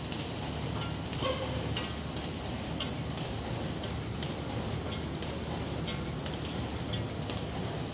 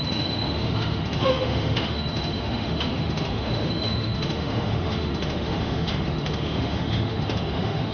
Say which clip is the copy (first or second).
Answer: second